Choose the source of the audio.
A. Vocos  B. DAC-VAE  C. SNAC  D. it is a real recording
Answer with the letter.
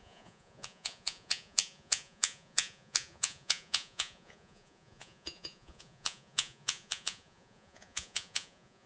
A